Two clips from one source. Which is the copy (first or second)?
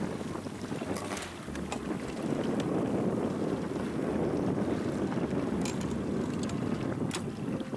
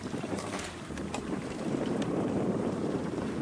second